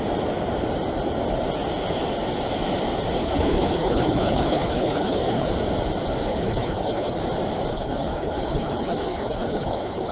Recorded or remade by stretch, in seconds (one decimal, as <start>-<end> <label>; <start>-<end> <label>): 0.0-3.2 recorded; 3.2-5.5 remade; 5.5-6.3 recorded; 6.3-7.2 remade; 7.2-7.7 recorded; 7.7-10.1 remade